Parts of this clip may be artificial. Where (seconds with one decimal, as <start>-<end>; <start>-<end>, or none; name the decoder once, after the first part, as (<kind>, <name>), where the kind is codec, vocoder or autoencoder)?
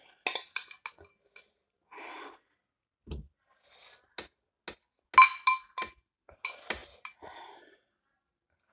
none